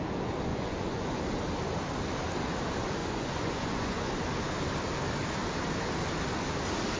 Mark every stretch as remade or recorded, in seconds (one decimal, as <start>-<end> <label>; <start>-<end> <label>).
0.0-0.5 recorded; 0.5-1.2 remade; 1.2-3.0 recorded; 3.0-4.1 remade; 4.1-7.0 recorded